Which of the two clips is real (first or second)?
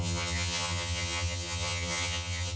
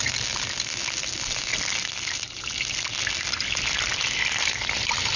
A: second